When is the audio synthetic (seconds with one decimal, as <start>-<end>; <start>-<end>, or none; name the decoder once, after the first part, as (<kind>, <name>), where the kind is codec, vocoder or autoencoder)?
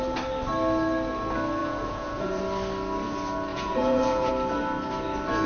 1.6-2.4 (vocoder, Vocos); 3.5-4.3